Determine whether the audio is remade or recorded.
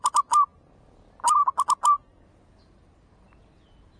recorded